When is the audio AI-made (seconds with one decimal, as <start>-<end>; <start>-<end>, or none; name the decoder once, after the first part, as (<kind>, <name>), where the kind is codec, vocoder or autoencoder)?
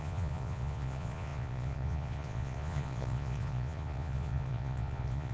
0.0-5.3 (vocoder, Vocos)